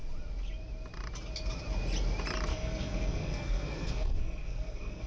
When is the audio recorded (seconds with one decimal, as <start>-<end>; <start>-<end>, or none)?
0.0-2.5

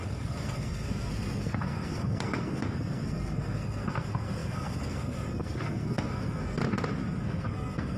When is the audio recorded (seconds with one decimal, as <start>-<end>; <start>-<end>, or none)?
6.6-7.2

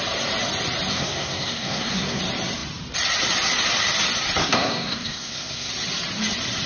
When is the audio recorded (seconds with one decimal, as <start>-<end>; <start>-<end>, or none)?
0.0-0.9; 2.2-4.4; 5.7-6.7

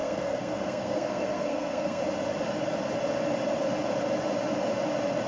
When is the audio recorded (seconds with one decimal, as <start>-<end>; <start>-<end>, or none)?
2.0-5.3

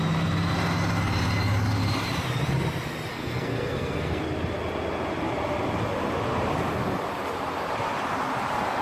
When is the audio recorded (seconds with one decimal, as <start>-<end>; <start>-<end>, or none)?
0.0-3.1; 4.2-8.8

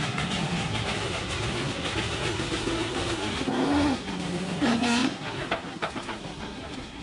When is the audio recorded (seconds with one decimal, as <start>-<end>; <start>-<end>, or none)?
none